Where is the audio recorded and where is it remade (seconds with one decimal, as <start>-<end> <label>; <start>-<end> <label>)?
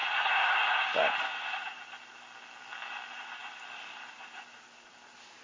0.0-5.4 recorded